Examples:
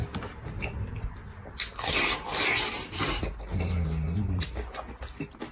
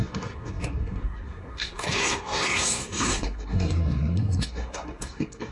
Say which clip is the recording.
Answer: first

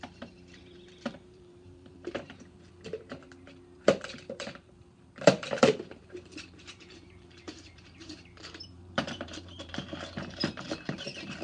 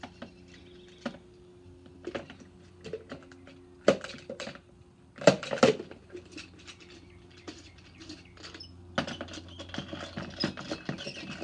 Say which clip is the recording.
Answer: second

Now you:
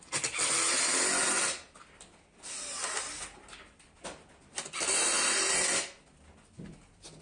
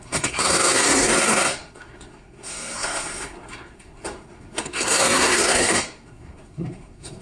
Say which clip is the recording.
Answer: first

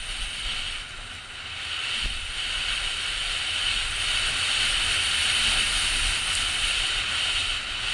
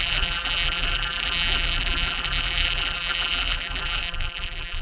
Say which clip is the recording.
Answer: first